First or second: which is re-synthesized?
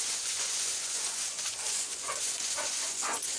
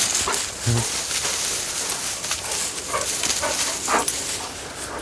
first